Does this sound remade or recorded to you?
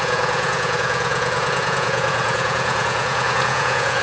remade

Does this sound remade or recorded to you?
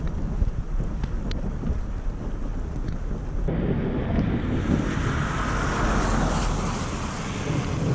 recorded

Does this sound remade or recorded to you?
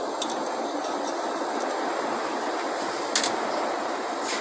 recorded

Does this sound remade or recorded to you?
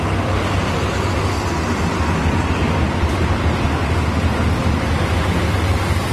recorded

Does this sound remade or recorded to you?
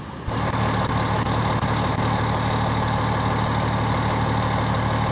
recorded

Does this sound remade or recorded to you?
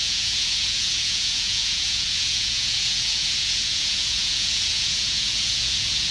remade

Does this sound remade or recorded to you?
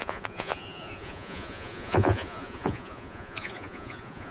remade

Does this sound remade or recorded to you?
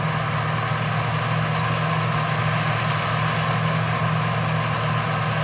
recorded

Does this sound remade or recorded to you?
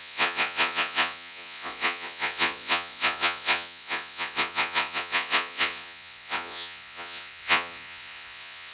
remade